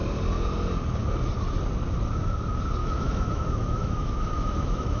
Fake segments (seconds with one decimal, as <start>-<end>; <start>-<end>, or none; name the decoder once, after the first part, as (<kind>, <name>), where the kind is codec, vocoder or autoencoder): 2.8-5.0 (autoencoder, DAC-VAE)